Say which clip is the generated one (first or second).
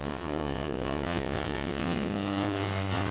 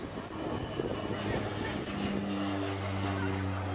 first